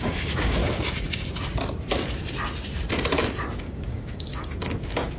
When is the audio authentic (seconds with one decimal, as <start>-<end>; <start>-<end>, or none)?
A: 0.6-3.6